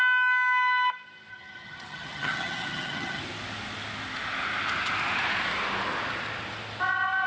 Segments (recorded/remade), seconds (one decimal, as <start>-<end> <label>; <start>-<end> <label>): 0.0-1.3 recorded; 1.3-3.2 remade; 3.2-7.3 recorded